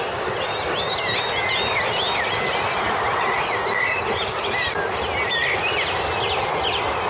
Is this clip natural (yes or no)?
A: yes